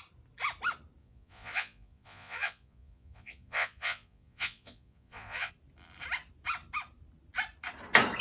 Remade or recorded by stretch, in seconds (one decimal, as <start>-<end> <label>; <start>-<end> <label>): 0.0-1.0 recorded; 1.0-5.5 remade; 5.5-8.2 recorded